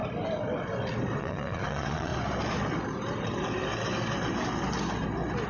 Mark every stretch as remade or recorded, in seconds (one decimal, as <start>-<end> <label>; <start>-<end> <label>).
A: 0.0-1.2 recorded; 1.2-2.1 remade; 2.1-5.5 recorded